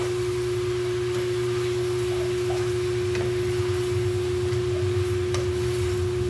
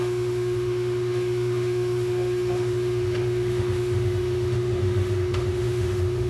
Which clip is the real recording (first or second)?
first